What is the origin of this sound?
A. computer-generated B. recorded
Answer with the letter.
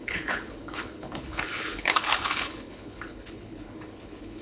A